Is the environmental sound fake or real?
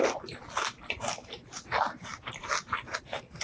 real